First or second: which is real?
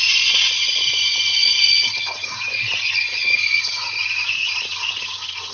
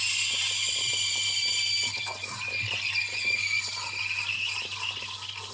second